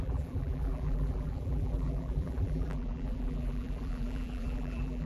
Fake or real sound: fake